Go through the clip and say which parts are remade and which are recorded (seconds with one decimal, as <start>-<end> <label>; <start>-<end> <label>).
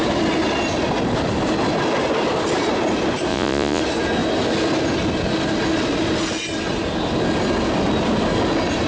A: 0.0-3.3 recorded; 3.3-3.8 remade; 3.8-8.9 recorded